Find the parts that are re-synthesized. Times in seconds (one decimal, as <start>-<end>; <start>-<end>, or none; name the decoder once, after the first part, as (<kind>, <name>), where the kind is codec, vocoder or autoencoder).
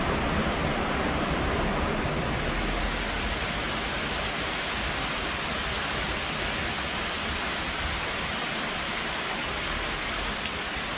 0.0-1.6 (vocoder, BigVGAN v2)